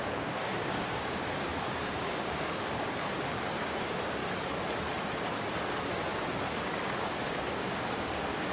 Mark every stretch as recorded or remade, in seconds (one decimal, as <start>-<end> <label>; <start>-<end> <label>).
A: 0.0-4.2 remade; 4.2-6.5 recorded; 6.5-8.5 remade